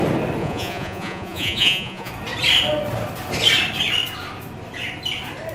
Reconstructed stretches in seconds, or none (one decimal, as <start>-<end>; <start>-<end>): 0.4-2.1